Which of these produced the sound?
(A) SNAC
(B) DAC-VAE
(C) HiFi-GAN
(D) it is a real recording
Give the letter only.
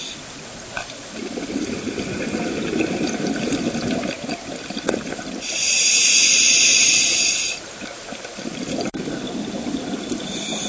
D